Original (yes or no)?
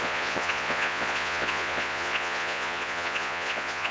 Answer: no